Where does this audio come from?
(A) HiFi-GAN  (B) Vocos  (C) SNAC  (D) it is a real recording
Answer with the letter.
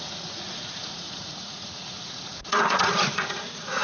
B